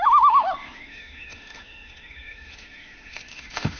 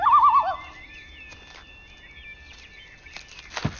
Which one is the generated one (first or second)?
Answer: first